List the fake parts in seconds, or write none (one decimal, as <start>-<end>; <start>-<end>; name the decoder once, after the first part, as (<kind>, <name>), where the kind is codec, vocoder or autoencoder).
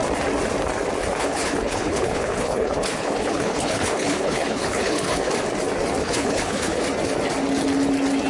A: 1.2-5.3 (codec, HILCodec); 6.0-6.8